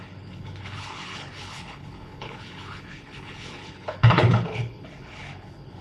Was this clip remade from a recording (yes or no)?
yes